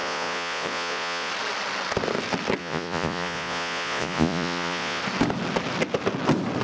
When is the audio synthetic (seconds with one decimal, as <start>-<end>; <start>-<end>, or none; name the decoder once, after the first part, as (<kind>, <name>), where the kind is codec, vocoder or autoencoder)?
0.0-1.3 (vocoder, Vocos); 2.6-5.0

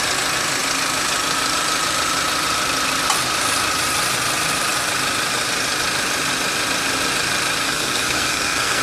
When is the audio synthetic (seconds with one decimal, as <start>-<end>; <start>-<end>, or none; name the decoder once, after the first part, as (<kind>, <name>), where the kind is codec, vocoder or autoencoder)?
7.6-8.8 (codec, SNAC)

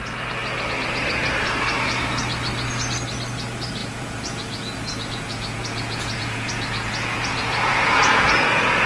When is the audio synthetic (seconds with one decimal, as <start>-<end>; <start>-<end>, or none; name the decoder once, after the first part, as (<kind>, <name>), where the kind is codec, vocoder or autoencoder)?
3.8-8.9 (vocoder, Vocos)

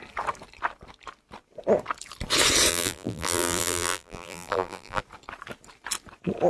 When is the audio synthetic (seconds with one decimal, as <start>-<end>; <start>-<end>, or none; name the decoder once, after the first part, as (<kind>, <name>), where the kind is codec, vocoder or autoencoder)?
2.7-5.0 (vocoder, BigVGAN v2)

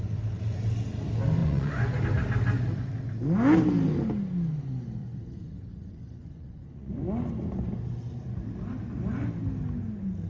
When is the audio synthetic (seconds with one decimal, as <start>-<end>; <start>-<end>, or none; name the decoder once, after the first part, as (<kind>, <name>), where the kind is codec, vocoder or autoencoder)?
1.4-2.0 (vocoder, Vocos); 5.0-6.9

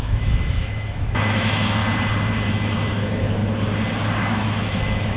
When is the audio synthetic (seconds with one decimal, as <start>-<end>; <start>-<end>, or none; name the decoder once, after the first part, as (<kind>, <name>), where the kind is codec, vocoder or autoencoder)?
0.0-1.8 (autoencoder, DAC-VAE); 2.5-3.4; 4.2-5.2